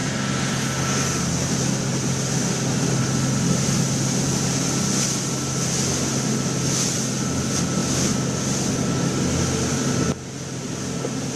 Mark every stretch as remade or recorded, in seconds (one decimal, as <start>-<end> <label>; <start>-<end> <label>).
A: 0.0-11.4 recorded